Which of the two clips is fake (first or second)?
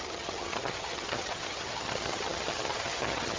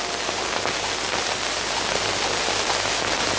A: first